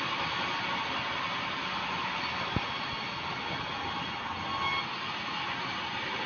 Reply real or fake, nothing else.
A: real